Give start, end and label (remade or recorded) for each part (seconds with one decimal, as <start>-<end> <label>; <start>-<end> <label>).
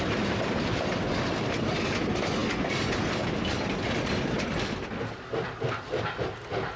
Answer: 0.0-6.8 recorded